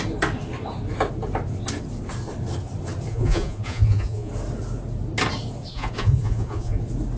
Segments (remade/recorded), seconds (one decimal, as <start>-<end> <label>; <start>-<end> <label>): 0.0-3.1 recorded; 3.1-4.3 remade; 4.3-5.7 recorded; 5.7-6.8 remade; 6.8-7.2 recorded